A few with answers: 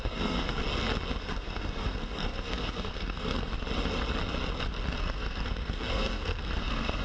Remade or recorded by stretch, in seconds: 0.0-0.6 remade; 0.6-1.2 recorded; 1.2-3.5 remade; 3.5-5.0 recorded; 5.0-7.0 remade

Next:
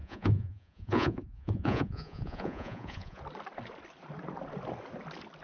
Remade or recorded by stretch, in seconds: 0.0-3.2 remade; 3.2-5.4 recorded

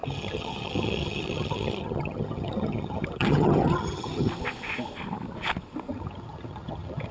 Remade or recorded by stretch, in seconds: 0.0-4.3 remade; 4.3-5.9 recorded; 5.9-7.1 remade

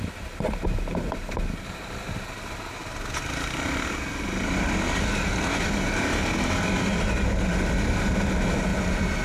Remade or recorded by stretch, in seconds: 0.0-9.2 recorded

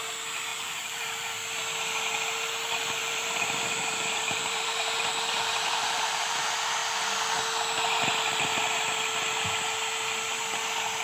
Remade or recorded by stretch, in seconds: 0.0-0.5 recorded; 0.5-1.3 remade; 1.3-3.0 recorded; 3.0-6.3 remade; 6.3-11.0 recorded

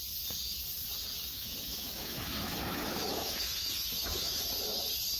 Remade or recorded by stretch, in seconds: 0.0-1.3 recorded; 1.3-4.4 remade; 4.4-5.2 recorded

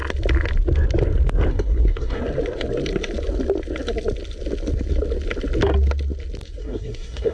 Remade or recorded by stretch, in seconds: 0.0-1.5 recorded; 1.5-2.2 remade; 2.2-6.6 recorded; 6.6-7.3 remade

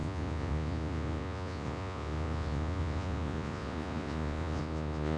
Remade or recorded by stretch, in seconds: 0.0-5.2 remade